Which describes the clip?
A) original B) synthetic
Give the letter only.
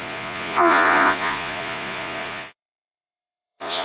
B